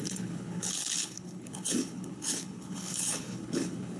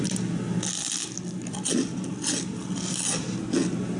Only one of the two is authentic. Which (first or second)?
second